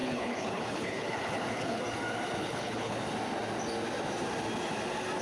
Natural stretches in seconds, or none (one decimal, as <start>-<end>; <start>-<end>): 1.8-2.4; 3.0-5.2

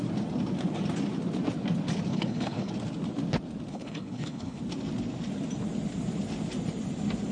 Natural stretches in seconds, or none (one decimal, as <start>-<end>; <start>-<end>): 0.0-2.1; 2.7-3.7; 4.6-7.3

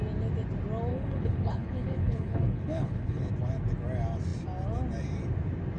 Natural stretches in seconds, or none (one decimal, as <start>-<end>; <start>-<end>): 0.0-0.9; 3.3-5.8

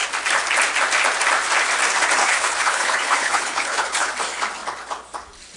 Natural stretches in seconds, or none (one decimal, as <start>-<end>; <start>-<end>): 0.0-2.2; 4.1-5.6

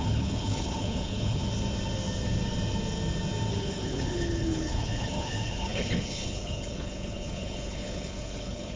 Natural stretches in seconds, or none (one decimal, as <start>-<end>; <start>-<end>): 1.4-3.5

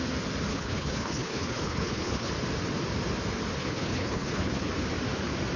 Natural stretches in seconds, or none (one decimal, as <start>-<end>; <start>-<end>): 0.0-0.5; 2.3-3.6; 4.7-5.6

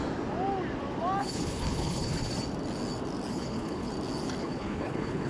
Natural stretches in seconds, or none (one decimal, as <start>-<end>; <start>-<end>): 0.0-1.2; 2.3-3.3; 3.9-4.4